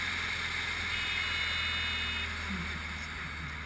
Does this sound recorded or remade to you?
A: recorded